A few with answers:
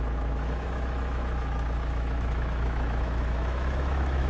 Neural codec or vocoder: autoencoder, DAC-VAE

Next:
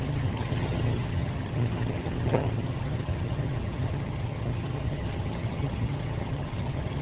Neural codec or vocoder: vocoder, HiFi-GAN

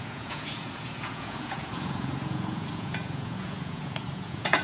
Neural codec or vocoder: vocoder, Vocos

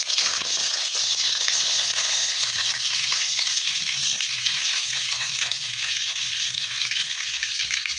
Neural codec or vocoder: codec, SNAC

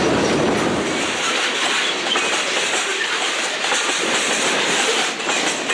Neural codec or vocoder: vocoder, BigVGAN v2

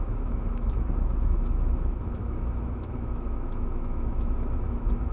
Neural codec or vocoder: autoencoder, DAC-VAE